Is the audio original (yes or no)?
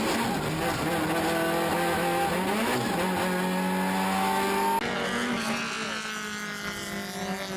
yes